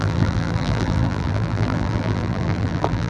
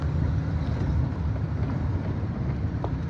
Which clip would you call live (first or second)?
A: second